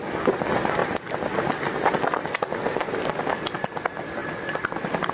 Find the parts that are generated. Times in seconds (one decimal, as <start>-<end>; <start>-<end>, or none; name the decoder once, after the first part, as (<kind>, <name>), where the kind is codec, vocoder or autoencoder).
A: 0.8-2.9 (vocoder, BigVGAN v2); 4.2-5.1